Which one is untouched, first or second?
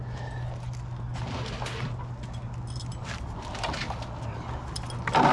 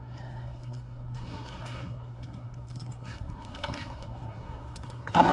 first